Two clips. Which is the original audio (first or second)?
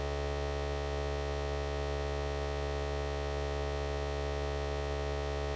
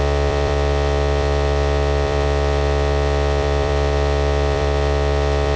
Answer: first